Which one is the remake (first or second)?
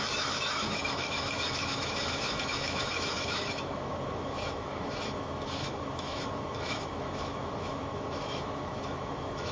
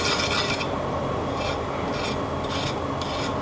first